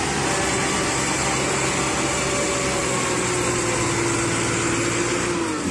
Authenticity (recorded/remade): recorded